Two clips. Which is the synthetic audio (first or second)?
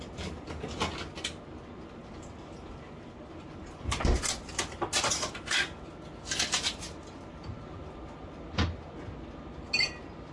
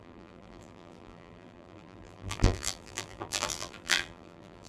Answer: second